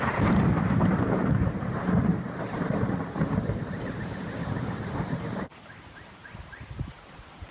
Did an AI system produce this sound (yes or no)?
yes